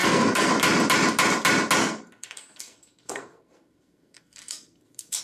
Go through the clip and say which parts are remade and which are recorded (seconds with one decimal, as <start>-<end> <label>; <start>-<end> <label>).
0.0-0.5 remade; 0.5-1.8 recorded; 1.8-5.2 remade